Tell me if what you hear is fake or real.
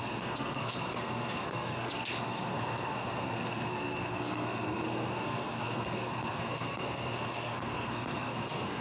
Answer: fake